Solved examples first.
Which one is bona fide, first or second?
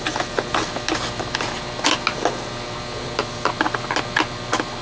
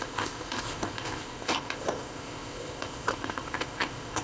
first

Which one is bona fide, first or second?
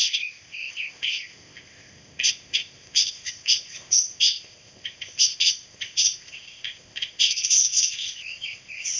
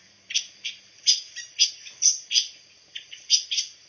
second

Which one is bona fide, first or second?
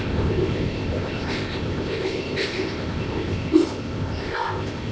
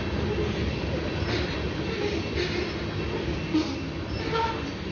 second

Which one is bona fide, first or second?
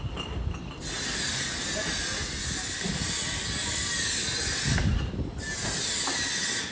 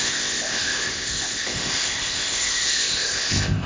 first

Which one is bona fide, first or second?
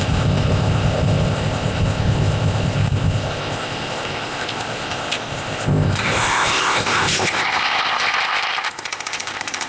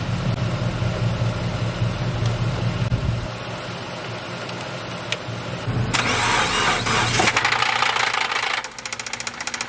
second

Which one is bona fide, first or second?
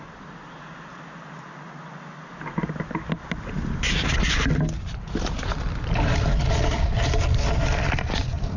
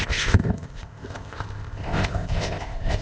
first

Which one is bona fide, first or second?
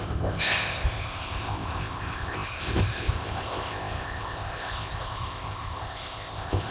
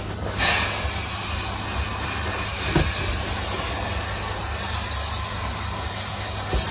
second